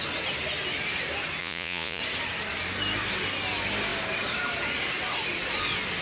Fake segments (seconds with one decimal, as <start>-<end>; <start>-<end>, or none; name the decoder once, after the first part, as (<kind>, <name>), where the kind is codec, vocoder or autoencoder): 1.4-2.0 (vocoder, Vocos)